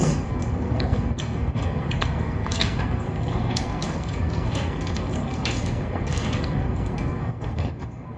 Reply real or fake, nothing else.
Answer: fake